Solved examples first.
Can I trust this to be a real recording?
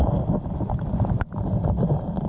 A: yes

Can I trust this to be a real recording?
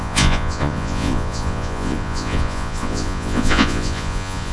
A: no